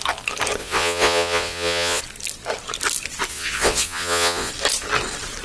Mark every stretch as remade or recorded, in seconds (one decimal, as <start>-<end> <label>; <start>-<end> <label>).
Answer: 0.0-0.6 recorded; 0.6-2.0 remade; 2.0-3.3 recorded; 3.3-4.5 remade; 4.5-5.4 recorded

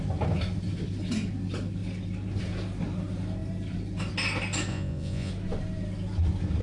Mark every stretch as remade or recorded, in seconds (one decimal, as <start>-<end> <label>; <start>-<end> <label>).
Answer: 0.0-4.7 recorded; 4.7-5.3 remade; 5.3-6.6 recorded

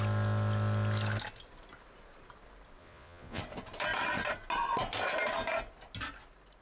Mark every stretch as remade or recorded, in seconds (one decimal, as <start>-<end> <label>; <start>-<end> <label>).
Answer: 0.0-2.8 recorded; 2.8-3.4 remade; 3.4-6.6 recorded

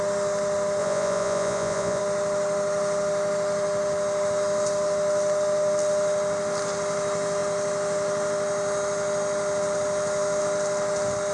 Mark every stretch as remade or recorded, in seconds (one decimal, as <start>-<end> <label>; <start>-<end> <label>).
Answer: 0.0-0.8 recorded; 0.8-2.0 remade; 2.0-11.3 recorded